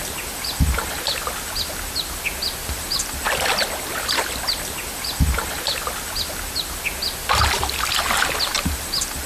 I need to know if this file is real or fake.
real